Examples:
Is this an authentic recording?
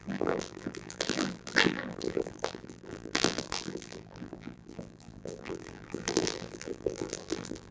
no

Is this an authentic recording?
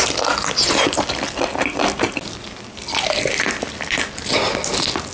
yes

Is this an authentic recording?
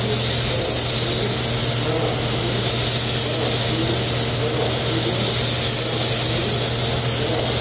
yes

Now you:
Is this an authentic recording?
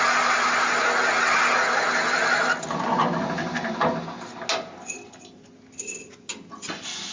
yes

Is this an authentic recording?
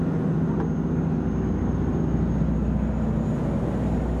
yes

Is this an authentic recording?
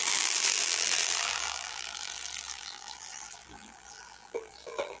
no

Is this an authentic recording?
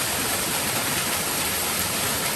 yes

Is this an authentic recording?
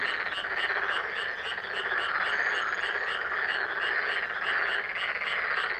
yes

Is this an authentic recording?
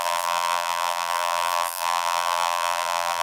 no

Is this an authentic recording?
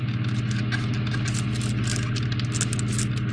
yes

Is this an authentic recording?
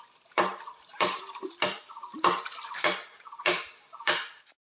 no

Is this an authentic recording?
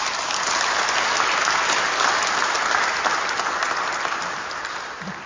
yes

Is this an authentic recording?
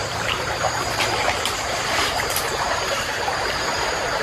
no